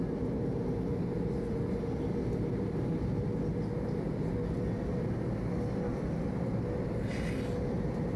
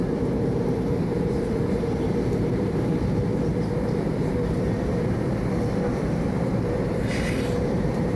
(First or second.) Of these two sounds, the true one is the first